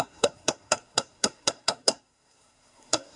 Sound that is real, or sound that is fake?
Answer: fake